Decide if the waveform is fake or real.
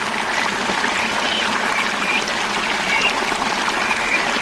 real